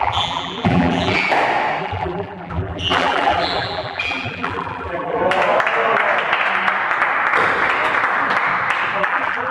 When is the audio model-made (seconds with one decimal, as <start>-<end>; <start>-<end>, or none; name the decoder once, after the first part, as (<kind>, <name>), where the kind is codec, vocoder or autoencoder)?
0.0-1.3 (vocoder, BigVGAN v2); 1.8-5.2; 9.0-9.5